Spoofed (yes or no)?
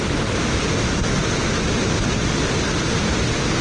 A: yes